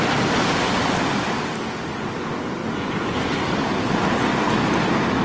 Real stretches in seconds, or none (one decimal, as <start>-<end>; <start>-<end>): 0.0-2.6; 3.3-5.2